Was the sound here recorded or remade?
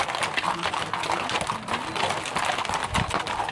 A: recorded